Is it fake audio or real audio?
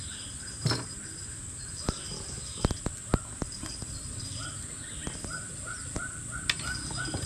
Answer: real